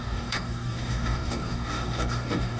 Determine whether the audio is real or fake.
fake